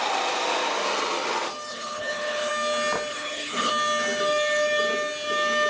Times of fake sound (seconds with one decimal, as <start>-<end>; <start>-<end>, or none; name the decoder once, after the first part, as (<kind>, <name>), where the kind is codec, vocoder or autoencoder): 1.7-2.5 (codec, HILCodec); 3.1-3.7